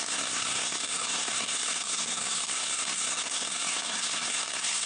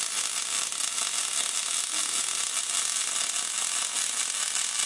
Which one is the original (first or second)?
second